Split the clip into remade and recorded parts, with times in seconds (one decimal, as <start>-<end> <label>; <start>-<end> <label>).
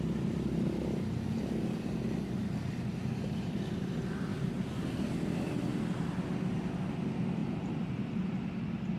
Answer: 0.0-2.9 recorded; 2.9-3.6 remade; 3.6-4.3 recorded; 4.3-5.0 remade; 5.0-7.4 recorded; 7.4-7.9 remade; 7.9-9.0 recorded